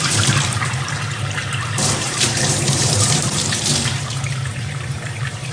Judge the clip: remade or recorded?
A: remade